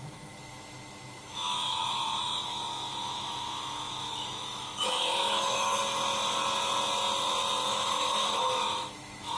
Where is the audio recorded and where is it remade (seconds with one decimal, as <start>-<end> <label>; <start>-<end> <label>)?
0.0-5.8 remade; 5.8-7.7 recorded; 7.7-9.4 remade